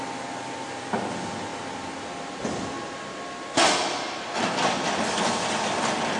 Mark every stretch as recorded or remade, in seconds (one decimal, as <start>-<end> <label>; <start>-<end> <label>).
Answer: 0.0-6.2 recorded